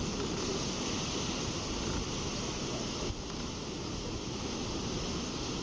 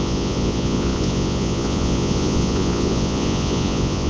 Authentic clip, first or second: first